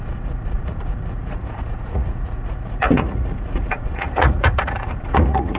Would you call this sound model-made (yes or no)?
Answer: yes